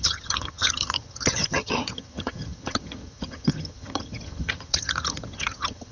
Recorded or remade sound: remade